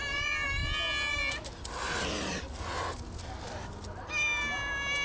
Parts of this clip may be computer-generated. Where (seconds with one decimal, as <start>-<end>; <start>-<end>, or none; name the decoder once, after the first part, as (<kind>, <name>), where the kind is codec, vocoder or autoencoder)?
none